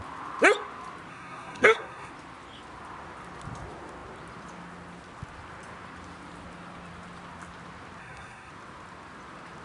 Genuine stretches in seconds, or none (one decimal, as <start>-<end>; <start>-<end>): 0.0-1.1; 2.1-8.0; 8.5-9.6